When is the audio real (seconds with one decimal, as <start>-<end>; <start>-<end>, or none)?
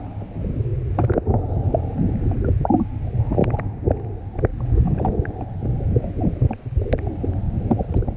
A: 0.0-8.2